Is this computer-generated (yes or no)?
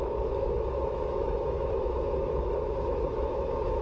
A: yes